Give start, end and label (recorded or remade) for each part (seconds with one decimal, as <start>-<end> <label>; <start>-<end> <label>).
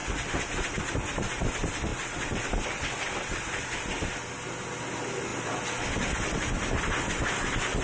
0.0-5.3 recorded; 5.3-6.8 remade; 6.8-7.8 recorded